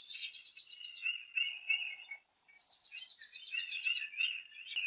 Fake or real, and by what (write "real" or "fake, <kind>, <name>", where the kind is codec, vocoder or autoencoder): real